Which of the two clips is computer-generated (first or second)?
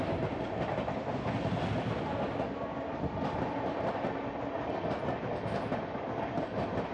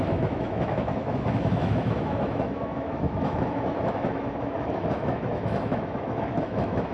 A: second